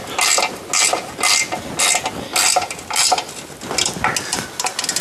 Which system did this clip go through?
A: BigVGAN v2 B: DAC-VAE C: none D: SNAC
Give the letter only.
C